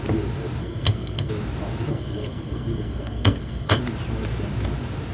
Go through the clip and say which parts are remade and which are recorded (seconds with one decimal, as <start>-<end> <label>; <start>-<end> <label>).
0.0-0.6 recorded; 0.6-1.3 remade; 1.3-1.9 recorded; 1.9-3.8 remade; 3.8-5.1 recorded